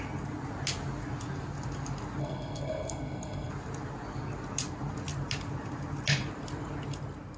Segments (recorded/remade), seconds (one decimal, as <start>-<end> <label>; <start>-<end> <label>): 0.0-2.2 recorded; 2.2-3.5 remade; 3.5-7.4 recorded